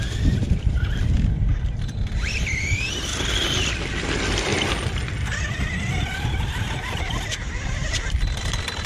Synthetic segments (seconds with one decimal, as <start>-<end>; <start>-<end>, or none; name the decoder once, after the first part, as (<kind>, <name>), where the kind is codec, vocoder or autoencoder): 0.0-4.5 (vocoder, BigVGAN v2); 5.3-8.9